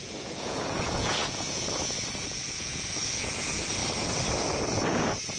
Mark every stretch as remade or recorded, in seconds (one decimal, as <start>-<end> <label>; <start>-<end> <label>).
0.0-3.8 remade; 3.8-4.5 recorded; 4.5-5.4 remade